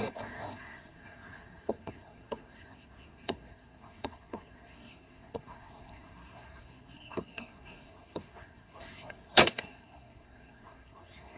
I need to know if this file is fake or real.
fake